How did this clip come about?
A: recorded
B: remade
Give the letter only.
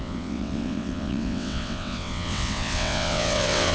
B